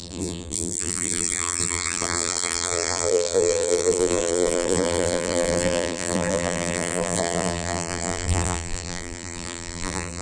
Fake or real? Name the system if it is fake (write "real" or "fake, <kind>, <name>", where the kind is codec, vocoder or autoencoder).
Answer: fake, vocoder, BigVGAN v2